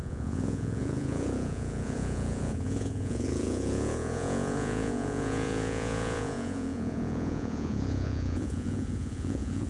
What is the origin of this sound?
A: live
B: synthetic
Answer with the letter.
B